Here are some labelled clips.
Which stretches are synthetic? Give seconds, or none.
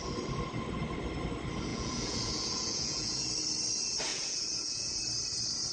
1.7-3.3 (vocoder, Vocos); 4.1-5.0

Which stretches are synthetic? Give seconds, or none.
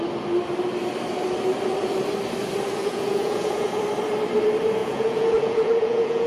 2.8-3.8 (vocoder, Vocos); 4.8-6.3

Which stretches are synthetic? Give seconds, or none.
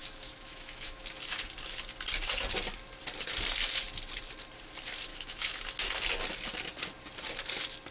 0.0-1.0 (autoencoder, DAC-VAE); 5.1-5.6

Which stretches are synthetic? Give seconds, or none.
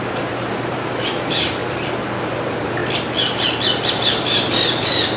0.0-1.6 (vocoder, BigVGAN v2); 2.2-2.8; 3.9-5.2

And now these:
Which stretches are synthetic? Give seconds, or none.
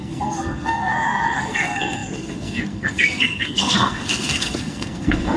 0.0-5.4 (codec, SNAC)